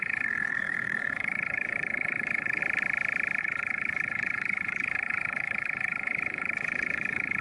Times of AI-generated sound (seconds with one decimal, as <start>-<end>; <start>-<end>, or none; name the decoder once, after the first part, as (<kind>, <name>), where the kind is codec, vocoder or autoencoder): 0.0-2.6 (codec, HILCodec); 3.4-7.4